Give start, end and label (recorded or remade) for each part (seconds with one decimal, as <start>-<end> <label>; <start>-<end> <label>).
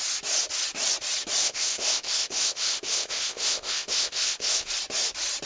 0.0-1.4 recorded; 1.4-4.7 remade; 4.7-5.5 recorded